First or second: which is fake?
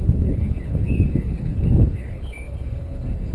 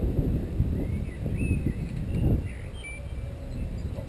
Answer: first